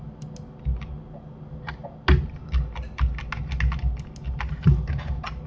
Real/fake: real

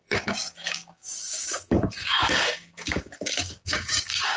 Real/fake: fake